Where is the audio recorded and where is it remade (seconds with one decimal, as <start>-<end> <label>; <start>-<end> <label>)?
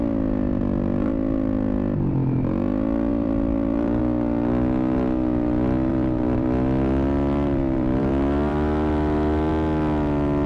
0.0-3.1 recorded; 3.1-4.0 remade; 4.0-5.9 recorded; 5.9-9.5 remade; 9.5-10.5 recorded